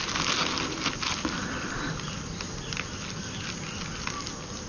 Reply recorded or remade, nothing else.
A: recorded